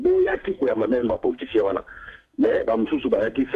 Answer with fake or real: fake